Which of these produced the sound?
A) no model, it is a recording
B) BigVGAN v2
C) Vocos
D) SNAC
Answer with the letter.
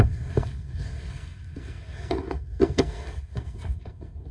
D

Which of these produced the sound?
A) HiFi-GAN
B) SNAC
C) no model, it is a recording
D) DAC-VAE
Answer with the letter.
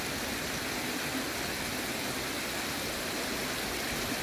C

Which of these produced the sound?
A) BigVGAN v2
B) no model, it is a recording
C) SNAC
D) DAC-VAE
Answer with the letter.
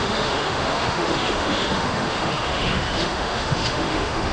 D